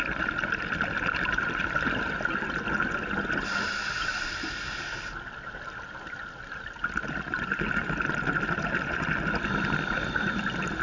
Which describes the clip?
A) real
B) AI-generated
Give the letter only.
A